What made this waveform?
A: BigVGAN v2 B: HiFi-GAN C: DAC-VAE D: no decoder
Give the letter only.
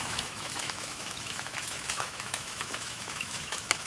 C